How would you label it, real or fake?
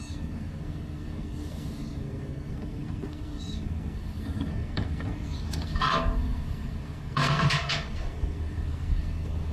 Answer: fake